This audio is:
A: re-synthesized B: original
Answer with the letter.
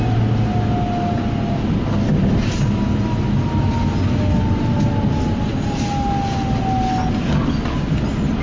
B